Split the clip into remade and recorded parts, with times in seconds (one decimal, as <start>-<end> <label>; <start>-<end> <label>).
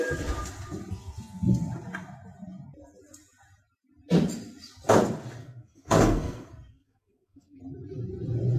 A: 0.0-5.4 recorded; 5.4-7.6 remade; 7.6-8.6 recorded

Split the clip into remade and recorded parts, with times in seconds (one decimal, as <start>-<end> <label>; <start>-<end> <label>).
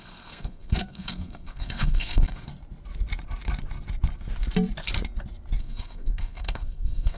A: 0.0-2.5 remade; 2.5-5.6 recorded; 5.6-7.2 remade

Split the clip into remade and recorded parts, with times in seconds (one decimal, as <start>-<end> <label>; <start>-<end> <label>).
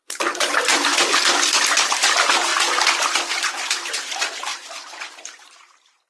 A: 0.0-0.7 remade; 0.7-1.6 recorded; 1.6-2.5 remade; 2.5-3.9 recorded; 3.9-4.5 remade; 4.5-5.1 recorded; 5.1-6.1 remade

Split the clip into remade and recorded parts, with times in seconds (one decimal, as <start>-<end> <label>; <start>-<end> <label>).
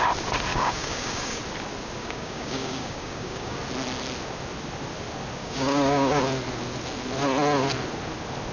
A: 0.0-0.5 recorded; 0.5-1.4 remade; 1.4-2.0 recorded; 2.0-3.6 remade; 3.6-5.4 recorded; 5.4-6.2 remade; 6.2-8.5 recorded